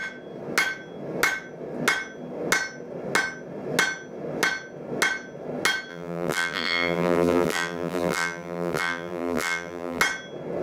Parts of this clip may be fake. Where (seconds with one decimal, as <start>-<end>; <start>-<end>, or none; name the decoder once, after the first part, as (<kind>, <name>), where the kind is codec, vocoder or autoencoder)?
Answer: 5.9-10.0 (vocoder, BigVGAN v2)